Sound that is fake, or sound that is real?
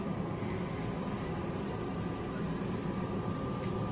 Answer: real